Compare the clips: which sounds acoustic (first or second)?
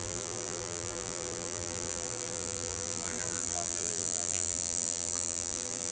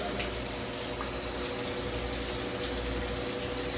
second